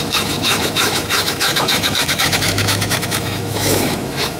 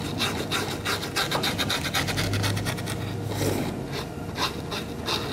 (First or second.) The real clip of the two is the second